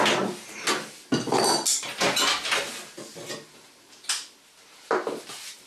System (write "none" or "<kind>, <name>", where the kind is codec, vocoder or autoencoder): none